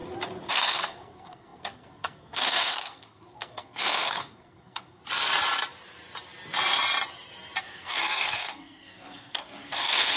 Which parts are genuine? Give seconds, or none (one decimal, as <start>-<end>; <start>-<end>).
0.0-0.5; 5.0-7.6